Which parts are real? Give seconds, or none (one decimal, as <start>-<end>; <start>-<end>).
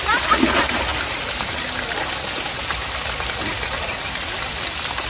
0.0-5.1